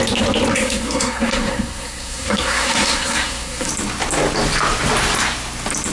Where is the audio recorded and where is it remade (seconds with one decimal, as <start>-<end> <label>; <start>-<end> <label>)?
0.0-0.5 recorded; 0.5-3.7 remade; 3.7-5.9 recorded